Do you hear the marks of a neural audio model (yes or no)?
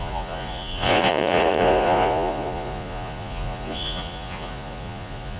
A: yes